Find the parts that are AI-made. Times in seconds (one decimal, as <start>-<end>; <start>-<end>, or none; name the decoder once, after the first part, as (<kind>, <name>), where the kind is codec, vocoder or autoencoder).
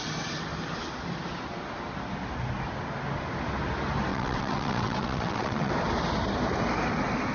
4.1-5.7 (vocoder, WaveNeXt)